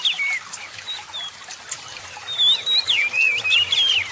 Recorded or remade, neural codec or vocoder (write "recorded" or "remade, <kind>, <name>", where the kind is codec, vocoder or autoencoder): recorded